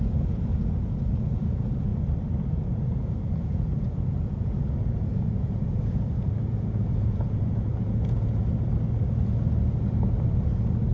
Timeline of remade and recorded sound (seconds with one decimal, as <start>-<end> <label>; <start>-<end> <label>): 0.0-1.9 remade; 1.9-2.5 recorded; 2.5-8.4 remade; 8.4-10.9 recorded